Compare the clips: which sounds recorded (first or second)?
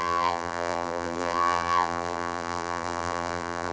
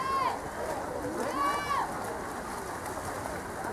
second